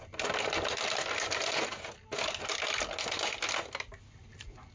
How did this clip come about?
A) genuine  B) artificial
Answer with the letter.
A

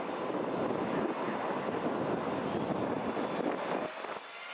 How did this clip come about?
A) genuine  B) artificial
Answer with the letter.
A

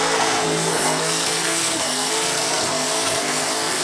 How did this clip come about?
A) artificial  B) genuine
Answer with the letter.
A